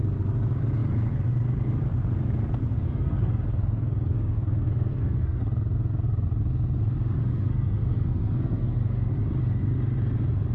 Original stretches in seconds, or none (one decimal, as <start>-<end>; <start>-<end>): 0.0-2.7; 5.4-7.2; 9.1-10.5